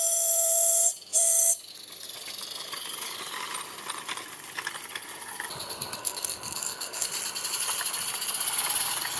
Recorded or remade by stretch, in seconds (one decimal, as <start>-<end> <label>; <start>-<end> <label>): 0.0-6.0 recorded; 6.0-7.1 remade; 7.1-9.2 recorded